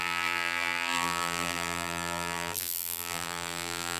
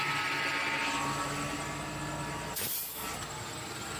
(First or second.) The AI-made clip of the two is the first